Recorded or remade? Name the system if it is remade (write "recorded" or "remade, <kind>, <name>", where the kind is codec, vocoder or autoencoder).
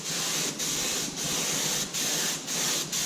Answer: recorded